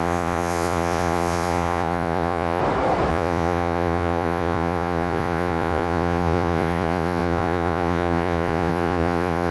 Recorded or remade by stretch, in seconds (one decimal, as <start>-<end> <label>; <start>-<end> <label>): 0.0-2.6 remade; 2.6-3.1 recorded; 3.1-9.5 remade